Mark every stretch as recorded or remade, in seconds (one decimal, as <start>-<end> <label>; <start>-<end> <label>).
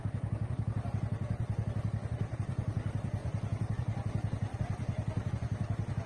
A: 0.0-6.1 recorded